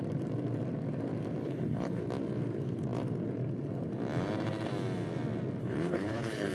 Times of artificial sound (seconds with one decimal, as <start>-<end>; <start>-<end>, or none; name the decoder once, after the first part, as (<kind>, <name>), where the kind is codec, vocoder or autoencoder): 1.4-2.0 (codec, HILCodec); 5.6-6.5